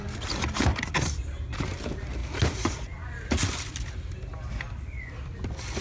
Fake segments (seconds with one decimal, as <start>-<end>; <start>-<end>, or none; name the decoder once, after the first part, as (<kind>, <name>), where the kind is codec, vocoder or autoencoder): none